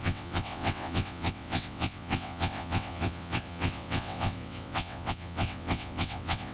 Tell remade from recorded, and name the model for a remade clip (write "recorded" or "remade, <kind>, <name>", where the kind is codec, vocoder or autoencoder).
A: remade, vocoder, WaveNeXt